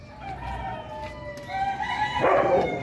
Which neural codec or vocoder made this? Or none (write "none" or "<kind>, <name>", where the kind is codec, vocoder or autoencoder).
none